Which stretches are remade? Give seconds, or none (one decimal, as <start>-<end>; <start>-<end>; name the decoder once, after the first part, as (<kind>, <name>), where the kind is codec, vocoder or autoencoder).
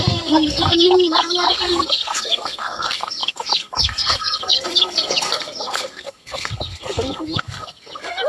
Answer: 0.0-8.3 (codec, SNAC)